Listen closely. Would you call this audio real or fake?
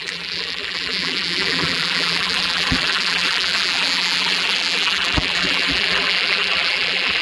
fake